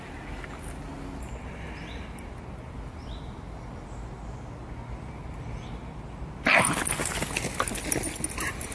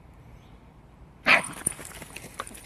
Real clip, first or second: first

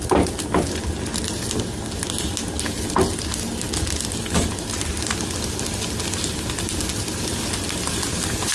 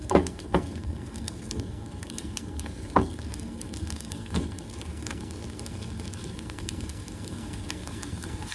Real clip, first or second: first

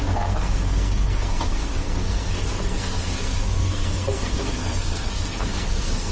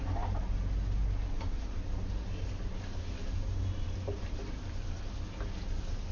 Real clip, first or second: second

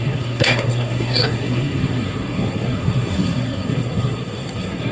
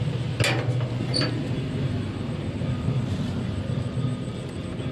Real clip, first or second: second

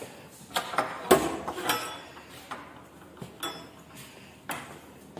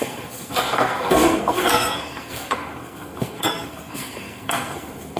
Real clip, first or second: first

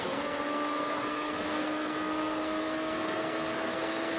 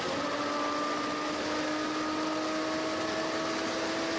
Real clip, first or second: second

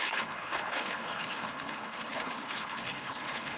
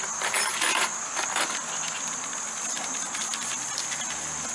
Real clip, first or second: second